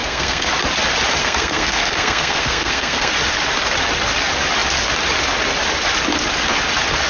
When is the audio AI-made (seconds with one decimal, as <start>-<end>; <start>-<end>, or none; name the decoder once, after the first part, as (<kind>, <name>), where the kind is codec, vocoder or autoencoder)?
0.0-0.5 (codec, SNAC); 1.2-3.1